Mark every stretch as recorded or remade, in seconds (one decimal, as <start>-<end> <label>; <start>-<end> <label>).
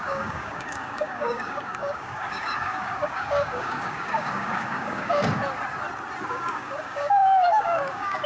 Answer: 0.0-5.4 remade; 5.4-6.3 recorded; 6.3-8.3 remade